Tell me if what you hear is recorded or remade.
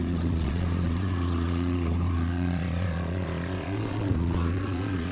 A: remade